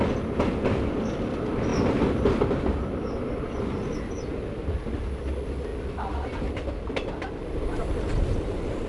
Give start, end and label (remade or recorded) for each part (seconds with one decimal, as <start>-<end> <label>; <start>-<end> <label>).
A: 0.0-8.9 recorded